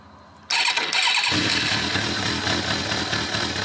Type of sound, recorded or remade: recorded